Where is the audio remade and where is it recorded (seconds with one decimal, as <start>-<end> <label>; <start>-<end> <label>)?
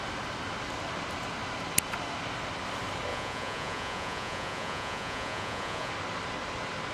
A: 0.0-3.1 recorded; 3.1-5.9 remade; 5.9-6.9 recorded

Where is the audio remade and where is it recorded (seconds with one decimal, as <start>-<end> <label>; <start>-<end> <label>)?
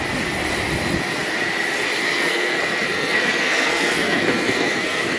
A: 0.0-2.0 recorded; 2.0-5.2 remade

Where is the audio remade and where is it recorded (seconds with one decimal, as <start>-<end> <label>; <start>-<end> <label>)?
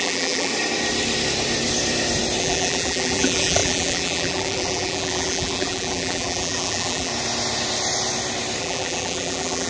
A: 0.0-0.5 remade; 0.5-2.4 recorded; 2.4-7.1 remade; 7.1-8.6 recorded; 8.6-9.7 remade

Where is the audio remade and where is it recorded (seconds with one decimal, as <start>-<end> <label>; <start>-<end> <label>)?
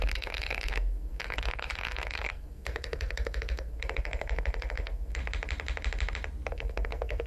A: 0.0-5.2 remade; 5.2-6.5 recorded; 6.5-7.3 remade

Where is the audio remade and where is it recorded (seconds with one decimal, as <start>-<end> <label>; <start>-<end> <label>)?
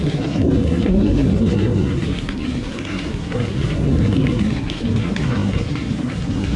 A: 0.0-6.6 remade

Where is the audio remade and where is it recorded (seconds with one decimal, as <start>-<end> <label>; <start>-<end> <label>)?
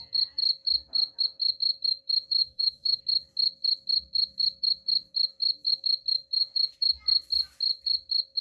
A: 0.0-2.4 recorded; 2.4-3.0 remade; 3.0-8.4 recorded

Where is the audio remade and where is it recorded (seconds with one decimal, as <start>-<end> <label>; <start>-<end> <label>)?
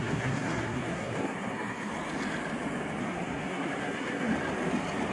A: 0.0-1.9 remade; 1.9-3.0 recorded; 3.0-4.3 remade; 4.3-5.1 recorded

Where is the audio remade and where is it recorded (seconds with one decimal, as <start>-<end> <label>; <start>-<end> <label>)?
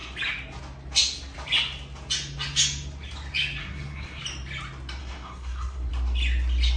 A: 0.0-3.6 recorded; 3.6-4.2 remade; 4.2-5.0 recorded; 5.0-5.9 remade; 5.9-6.8 recorded